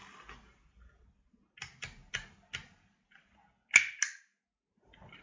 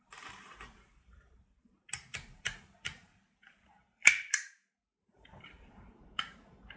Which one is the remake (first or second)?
second